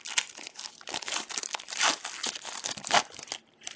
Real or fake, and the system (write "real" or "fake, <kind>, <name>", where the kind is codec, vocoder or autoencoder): real